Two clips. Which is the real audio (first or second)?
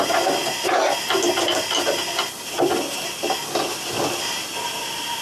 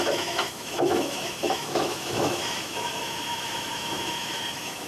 first